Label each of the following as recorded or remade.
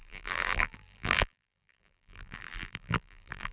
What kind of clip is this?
remade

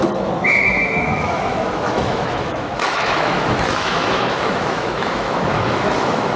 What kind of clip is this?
remade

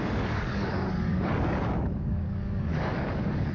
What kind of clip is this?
remade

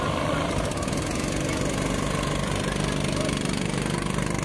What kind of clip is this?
recorded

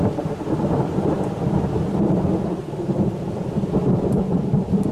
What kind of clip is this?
remade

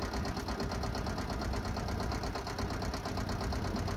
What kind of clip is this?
recorded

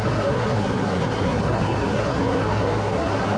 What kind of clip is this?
remade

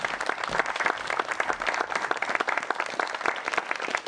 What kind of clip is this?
recorded